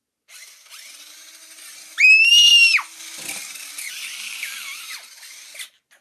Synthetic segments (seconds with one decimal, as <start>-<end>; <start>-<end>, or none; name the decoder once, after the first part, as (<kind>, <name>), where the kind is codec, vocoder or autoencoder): none